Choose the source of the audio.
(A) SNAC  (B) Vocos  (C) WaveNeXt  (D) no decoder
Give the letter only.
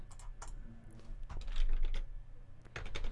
D